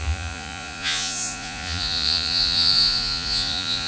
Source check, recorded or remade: remade